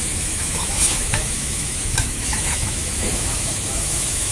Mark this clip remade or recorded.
remade